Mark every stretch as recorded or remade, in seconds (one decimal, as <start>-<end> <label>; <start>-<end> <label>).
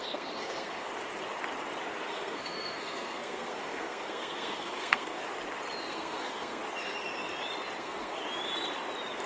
0.0-0.9 remade; 0.9-2.1 recorded; 2.1-5.2 remade; 5.2-5.8 recorded; 5.8-6.6 remade; 6.6-7.8 recorded; 7.8-8.2 remade; 8.2-9.3 recorded